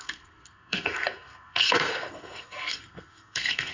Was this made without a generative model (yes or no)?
no